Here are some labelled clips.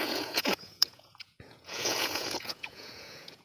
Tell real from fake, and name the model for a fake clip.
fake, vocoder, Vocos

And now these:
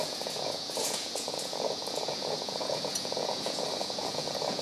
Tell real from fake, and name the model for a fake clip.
fake, vocoder, Vocos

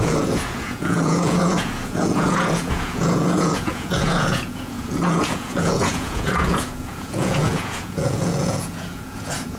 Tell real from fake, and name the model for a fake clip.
fake, vocoder, Vocos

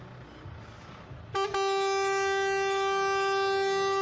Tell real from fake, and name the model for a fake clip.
real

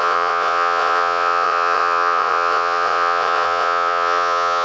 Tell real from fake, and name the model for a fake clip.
fake, vocoder, Vocos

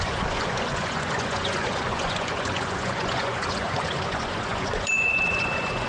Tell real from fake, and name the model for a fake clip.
fake, vocoder, Vocos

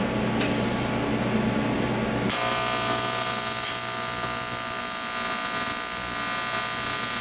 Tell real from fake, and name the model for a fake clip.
real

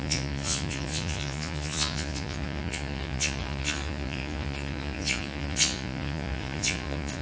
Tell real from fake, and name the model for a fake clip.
fake, vocoder, Vocos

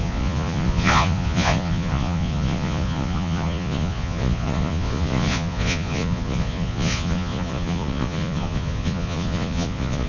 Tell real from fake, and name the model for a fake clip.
fake, vocoder, Vocos